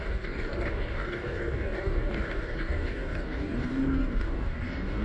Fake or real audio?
fake